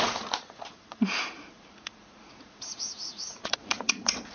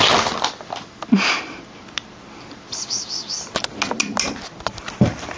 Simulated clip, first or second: first